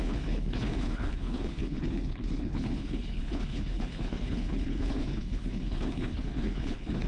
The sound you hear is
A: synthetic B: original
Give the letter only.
A